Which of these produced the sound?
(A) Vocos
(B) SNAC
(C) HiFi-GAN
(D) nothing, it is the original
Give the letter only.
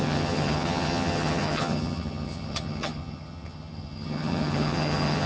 C